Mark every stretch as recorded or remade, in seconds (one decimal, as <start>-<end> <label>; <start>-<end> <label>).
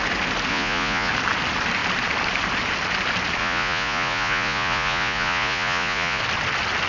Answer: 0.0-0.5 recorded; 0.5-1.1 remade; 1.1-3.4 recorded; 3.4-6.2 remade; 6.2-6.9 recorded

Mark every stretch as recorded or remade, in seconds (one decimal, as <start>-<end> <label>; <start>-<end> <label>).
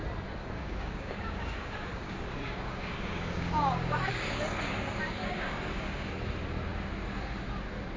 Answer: 0.0-0.4 recorded; 0.4-4.4 remade; 4.4-5.2 recorded; 5.2-6.1 remade; 6.1-8.0 recorded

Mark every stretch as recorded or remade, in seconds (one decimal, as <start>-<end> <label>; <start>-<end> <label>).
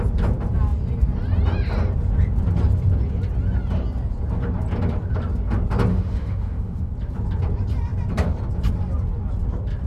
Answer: 0.0-5.9 recorded; 5.9-6.9 remade; 6.9-9.9 recorded